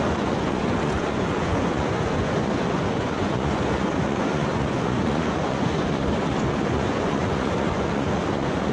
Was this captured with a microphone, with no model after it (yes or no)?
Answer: no